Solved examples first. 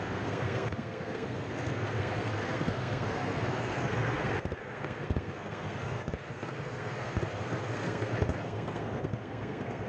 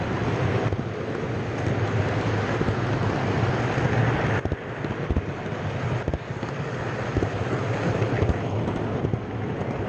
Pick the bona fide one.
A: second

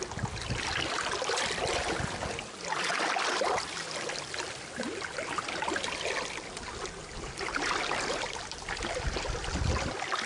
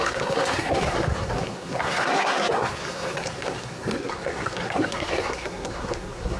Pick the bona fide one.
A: first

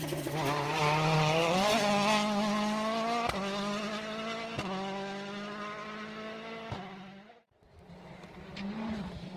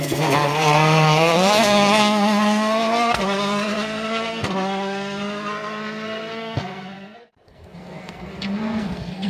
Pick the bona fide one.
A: first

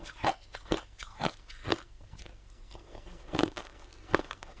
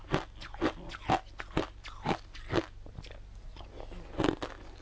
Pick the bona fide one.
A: second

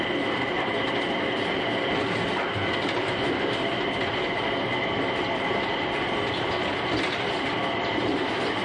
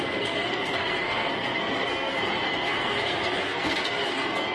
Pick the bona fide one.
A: first